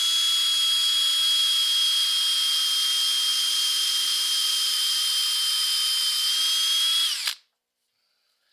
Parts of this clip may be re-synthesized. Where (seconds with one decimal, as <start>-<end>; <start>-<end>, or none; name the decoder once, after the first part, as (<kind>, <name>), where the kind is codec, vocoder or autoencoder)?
3.3-5.0 (vocoder, BigVGAN v2)